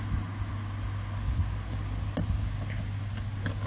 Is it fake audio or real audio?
real